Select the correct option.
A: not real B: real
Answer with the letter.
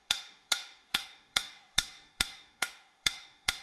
A